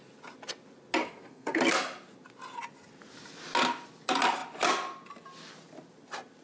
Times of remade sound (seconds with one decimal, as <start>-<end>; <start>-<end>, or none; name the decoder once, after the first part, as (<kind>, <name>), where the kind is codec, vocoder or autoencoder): 1.0-1.6 (codec, SNAC)